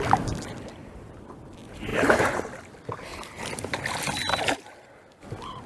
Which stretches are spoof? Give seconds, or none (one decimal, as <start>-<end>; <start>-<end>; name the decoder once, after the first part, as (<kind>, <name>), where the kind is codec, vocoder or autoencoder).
0.8-1.5 (vocoder, BigVGAN v2); 1.9-2.4